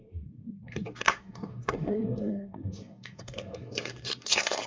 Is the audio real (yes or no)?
no